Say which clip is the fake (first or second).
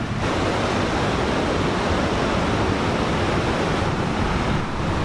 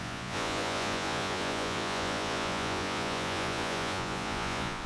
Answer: second